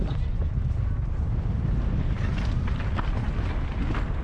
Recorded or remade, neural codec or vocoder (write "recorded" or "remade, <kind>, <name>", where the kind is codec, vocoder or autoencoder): recorded